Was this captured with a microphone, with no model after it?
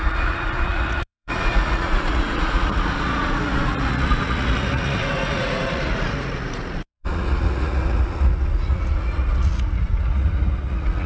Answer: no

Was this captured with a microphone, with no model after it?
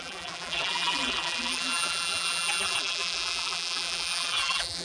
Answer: no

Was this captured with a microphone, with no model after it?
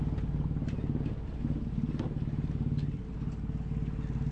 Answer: yes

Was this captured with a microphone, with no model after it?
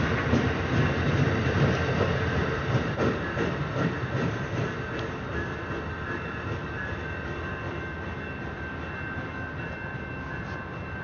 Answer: yes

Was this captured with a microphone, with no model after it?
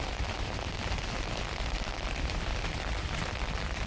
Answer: yes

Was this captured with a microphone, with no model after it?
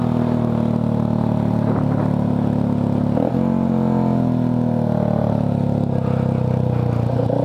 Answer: yes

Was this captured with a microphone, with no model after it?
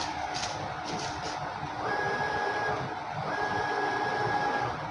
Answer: yes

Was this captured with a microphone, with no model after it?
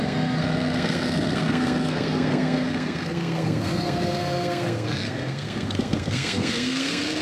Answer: no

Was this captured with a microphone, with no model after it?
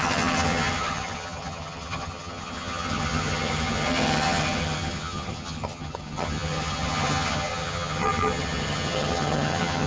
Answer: no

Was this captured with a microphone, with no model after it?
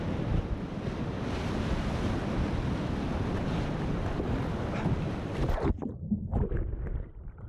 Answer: yes